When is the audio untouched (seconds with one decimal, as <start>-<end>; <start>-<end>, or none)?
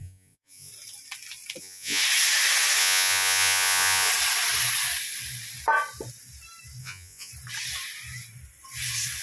0.7-1.6; 2.0-2.8; 4.1-6.8; 7.3-9.2